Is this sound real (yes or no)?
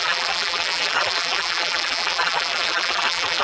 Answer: no